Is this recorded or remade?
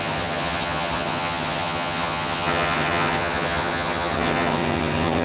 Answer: remade